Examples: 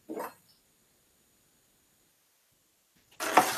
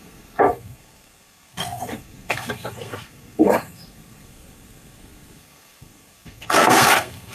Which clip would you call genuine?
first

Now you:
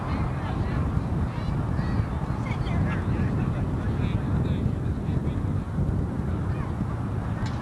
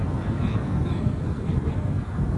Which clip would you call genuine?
first